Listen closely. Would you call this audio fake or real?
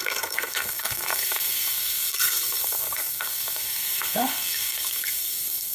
fake